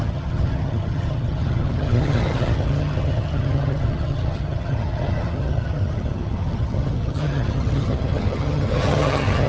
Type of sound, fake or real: fake